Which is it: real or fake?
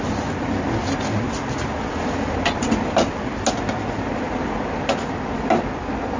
real